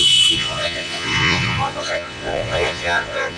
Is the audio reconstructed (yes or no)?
yes